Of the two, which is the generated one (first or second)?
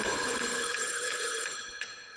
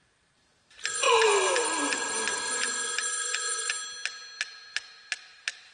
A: first